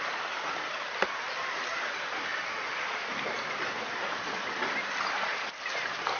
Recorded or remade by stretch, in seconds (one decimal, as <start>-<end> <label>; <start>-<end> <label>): 0.0-6.2 recorded